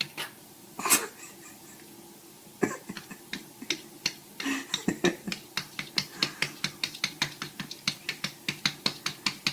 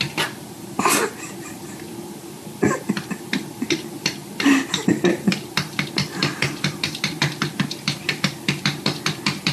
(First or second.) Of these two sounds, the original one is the first